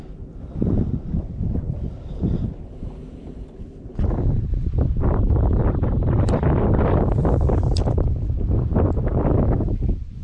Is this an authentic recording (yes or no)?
no